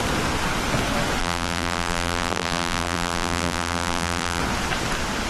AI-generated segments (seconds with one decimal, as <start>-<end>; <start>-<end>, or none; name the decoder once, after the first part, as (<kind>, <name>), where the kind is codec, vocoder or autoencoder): 1.2-4.4 (vocoder, BigVGAN v2)